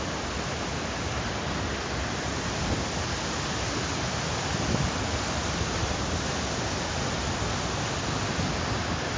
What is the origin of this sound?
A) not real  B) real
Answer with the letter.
B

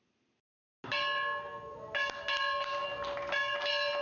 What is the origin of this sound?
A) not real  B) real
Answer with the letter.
B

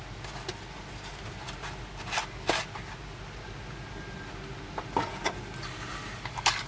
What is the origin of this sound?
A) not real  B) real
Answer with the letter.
B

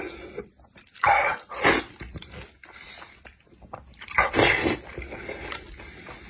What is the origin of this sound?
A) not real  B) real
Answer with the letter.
B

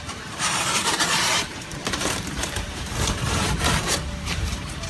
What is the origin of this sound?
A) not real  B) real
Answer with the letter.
A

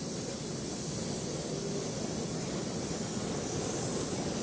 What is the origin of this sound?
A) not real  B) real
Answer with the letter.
B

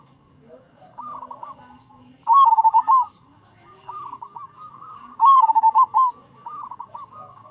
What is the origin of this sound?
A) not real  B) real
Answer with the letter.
A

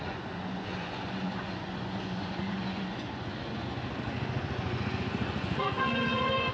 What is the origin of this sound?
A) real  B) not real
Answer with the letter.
B